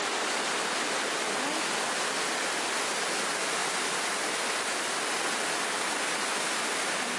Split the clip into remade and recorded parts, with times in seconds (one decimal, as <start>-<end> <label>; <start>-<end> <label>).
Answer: 0.0-7.2 recorded